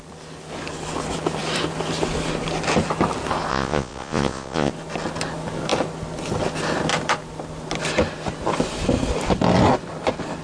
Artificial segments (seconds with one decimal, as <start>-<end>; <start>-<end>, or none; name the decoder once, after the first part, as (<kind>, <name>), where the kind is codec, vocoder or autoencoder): 3.5-4.7 (vocoder, Vocos)